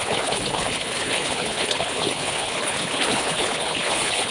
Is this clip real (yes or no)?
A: no